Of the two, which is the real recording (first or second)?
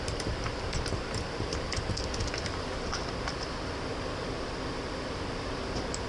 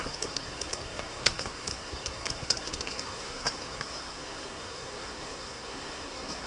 first